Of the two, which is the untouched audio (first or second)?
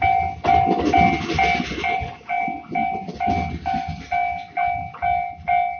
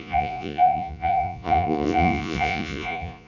first